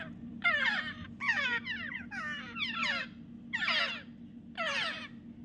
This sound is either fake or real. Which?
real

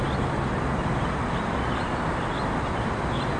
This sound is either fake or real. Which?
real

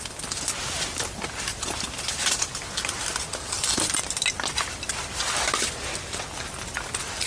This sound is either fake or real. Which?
real